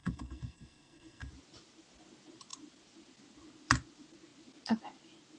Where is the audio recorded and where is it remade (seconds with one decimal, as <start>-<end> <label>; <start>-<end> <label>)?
0.0-1.3 remade; 1.3-5.4 recorded